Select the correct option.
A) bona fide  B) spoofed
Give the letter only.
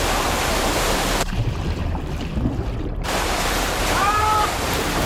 B